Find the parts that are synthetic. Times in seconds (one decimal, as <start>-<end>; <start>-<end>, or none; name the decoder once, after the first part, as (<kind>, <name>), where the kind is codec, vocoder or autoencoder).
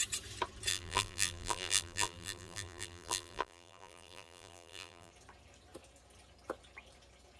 0.7-5.1 (vocoder, BigVGAN v2)